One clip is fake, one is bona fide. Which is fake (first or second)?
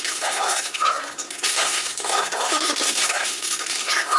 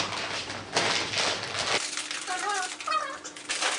first